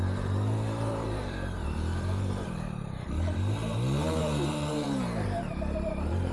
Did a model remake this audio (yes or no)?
yes